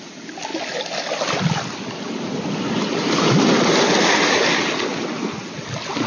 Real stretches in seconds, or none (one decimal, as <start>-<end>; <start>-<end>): 0.0-6.1